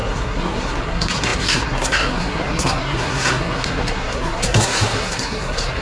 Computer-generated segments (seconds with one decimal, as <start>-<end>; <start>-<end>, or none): 0.0-5.8